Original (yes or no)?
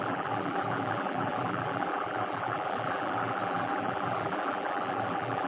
no